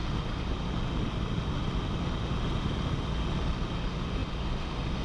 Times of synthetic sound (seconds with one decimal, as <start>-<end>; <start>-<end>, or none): none